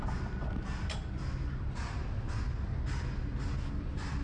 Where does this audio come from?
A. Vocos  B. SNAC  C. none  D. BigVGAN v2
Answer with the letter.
C